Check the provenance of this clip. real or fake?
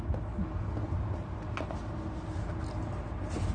real